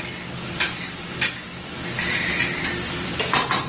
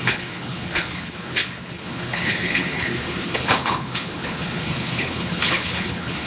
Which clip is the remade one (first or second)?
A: second